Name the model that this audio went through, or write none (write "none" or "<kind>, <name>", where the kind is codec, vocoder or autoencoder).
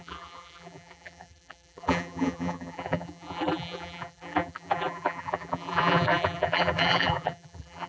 vocoder, BigVGAN v2